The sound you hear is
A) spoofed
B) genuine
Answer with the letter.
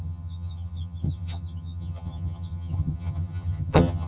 A